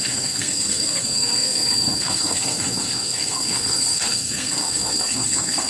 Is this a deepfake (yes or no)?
yes